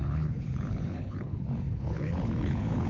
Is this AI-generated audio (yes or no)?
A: yes